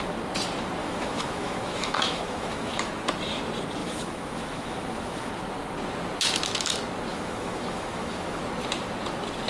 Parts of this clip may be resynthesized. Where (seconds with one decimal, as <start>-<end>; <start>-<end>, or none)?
0.8-2.9; 3.8-5.3; 7.1-8.4